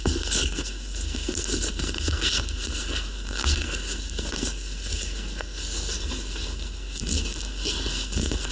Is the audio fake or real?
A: fake